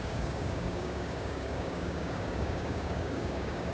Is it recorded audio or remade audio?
remade